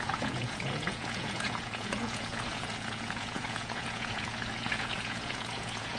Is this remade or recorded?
remade